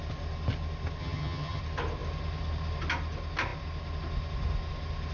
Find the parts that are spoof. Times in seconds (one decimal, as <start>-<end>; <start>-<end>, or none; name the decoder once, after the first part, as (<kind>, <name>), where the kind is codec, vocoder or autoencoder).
1.0-1.6 (vocoder, HiFi-GAN)